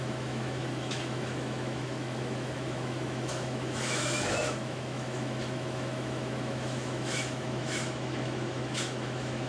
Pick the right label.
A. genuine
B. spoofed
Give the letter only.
B